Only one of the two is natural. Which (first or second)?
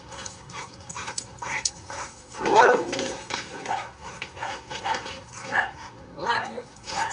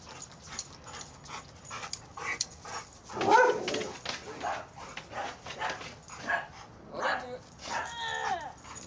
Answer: second